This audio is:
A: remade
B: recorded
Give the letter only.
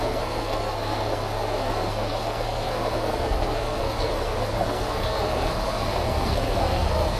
A